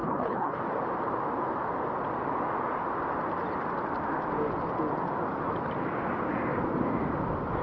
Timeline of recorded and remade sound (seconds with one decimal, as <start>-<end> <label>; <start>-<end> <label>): 0.0-0.6 remade; 0.6-7.6 recorded